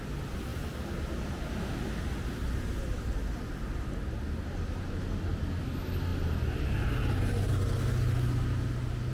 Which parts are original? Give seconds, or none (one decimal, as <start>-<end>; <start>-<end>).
0.0-9.1